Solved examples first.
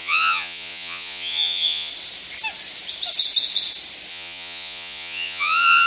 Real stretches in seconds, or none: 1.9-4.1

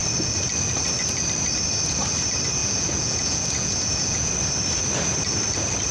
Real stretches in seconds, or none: 0.0-2.6; 4.3-5.9